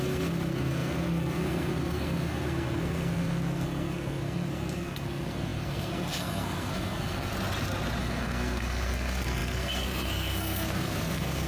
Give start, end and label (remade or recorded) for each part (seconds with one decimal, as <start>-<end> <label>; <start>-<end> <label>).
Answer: 0.0-7.3 remade; 7.3-8.0 recorded; 8.0-11.5 remade